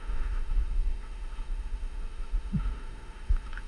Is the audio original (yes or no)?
no